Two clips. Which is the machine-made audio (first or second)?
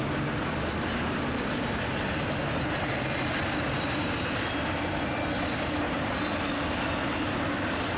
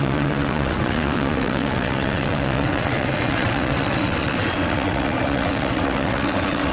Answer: second